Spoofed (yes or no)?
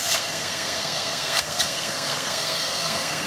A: yes